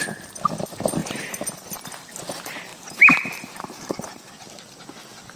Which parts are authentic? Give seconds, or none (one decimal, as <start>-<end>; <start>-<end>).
0.0-2.7; 4.3-5.4